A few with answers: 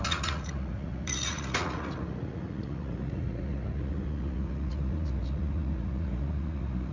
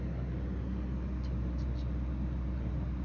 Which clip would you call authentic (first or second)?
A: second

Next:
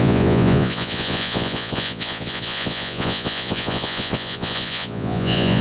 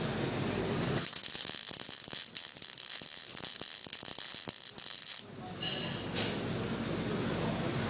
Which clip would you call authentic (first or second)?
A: second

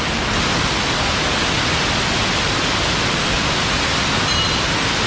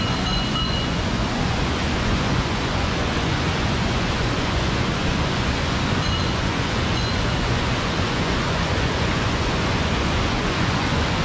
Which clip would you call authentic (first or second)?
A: first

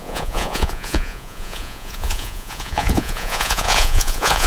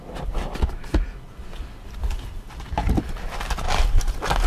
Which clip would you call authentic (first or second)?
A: second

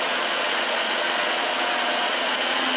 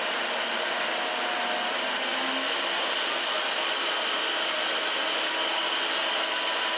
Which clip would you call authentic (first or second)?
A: second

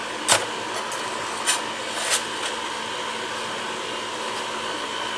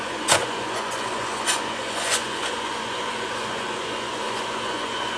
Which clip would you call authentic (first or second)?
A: first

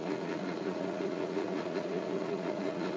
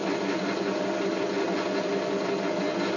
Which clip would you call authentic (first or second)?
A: second